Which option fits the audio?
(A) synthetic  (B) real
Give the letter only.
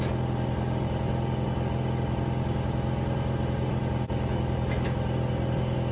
B